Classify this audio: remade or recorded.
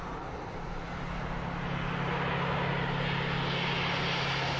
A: recorded